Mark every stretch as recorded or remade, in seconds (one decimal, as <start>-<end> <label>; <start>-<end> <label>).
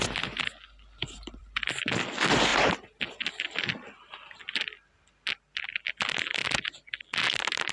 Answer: 0.0-1.0 recorded; 1.0-1.8 remade; 1.8-2.5 recorded; 2.5-3.0 remade; 3.0-6.4 recorded; 6.4-7.0 remade; 7.0-7.7 recorded